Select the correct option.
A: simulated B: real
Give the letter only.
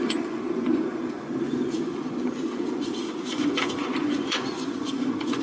A